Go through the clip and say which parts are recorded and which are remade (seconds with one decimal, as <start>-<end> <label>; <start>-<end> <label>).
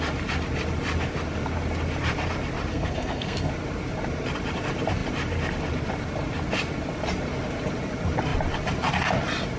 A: 0.0-2.7 recorded; 2.7-3.5 remade; 3.5-9.6 recorded